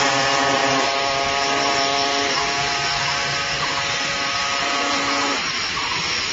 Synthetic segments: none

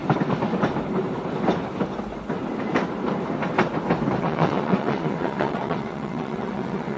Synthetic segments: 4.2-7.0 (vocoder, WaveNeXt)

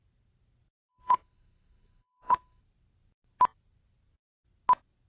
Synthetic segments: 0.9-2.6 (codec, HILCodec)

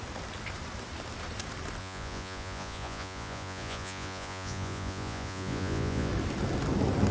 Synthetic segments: 1.8-6.1 (vocoder, Vocos)

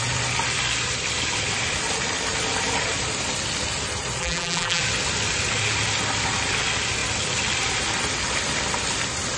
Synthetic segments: 4.2-4.8 (vocoder, BigVGAN v2)

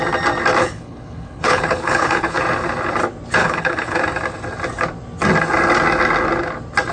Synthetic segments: 0.6-2.4 (codec, HILCodec); 3.4-4.0